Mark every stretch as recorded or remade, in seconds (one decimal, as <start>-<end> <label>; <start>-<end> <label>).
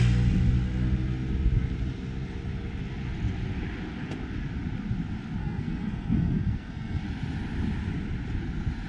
0.0-5.4 recorded; 5.4-7.0 remade; 7.0-8.9 recorded